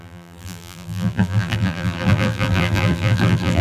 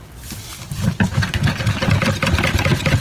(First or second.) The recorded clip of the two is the second